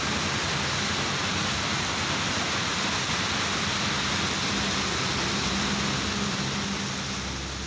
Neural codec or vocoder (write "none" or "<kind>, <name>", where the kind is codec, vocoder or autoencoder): none